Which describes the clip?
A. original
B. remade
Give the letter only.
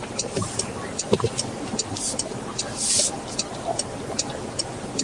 A